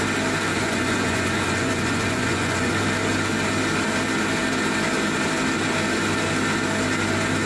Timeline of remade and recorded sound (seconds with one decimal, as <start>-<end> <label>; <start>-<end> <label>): 0.0-0.5 recorded; 0.5-2.7 remade; 2.7-7.5 recorded